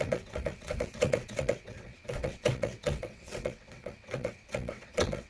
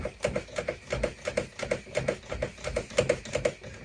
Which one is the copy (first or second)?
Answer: first